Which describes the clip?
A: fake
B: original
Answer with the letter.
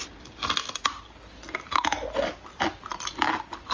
B